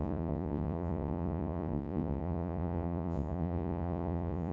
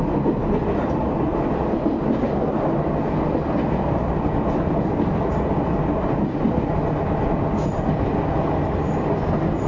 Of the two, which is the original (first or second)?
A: second